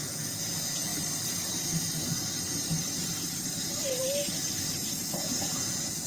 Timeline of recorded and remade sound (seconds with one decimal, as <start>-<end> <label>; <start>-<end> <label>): 0.0-0.9 remade; 0.9-4.6 recorded; 4.6-6.1 remade